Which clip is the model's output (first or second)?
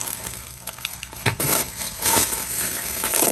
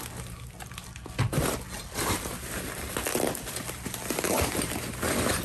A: first